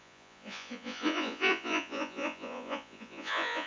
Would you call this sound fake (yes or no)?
yes